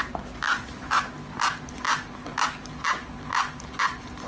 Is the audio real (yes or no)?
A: yes